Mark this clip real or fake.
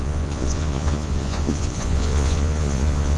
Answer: fake